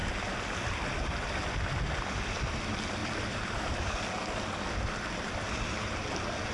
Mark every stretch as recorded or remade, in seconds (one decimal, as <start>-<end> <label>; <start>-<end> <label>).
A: 0.0-1.1 remade; 1.1-3.0 recorded; 3.0-3.9 remade; 3.9-6.5 recorded